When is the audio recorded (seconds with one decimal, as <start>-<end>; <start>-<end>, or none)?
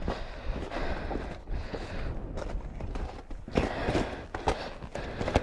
0.0-1.4; 1.9-5.4